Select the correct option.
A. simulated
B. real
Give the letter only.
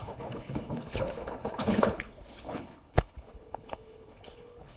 A